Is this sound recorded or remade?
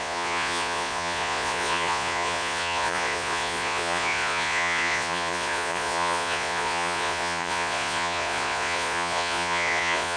remade